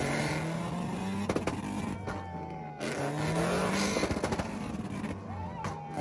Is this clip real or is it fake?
real